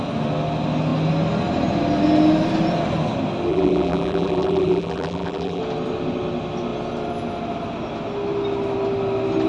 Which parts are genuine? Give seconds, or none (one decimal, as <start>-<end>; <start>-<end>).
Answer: 0.0-3.5; 5.6-9.5